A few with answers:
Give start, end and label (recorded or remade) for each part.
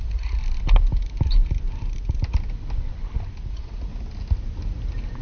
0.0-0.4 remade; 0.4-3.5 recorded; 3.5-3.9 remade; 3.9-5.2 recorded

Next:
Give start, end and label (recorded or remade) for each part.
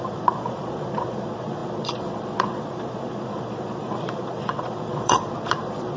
0.0-6.0 remade